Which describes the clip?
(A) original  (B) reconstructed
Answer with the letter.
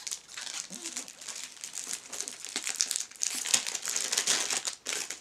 A